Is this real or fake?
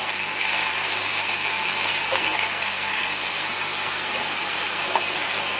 fake